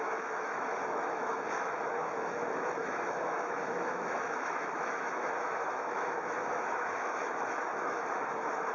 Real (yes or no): no